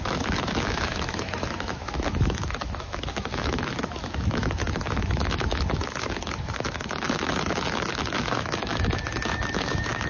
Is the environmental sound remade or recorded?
remade